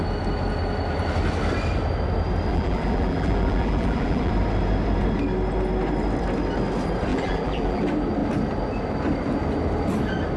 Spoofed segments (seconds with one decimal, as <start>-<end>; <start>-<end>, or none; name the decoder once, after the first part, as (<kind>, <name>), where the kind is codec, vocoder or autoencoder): 2.5-4.3 (vocoder, BigVGAN v2); 7.1-7.8